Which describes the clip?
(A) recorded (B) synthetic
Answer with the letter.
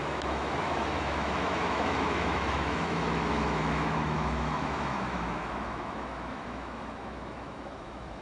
B